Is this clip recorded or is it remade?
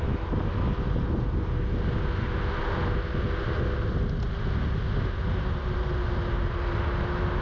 recorded